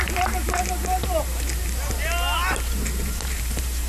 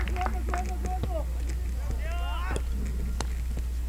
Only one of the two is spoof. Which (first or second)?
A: first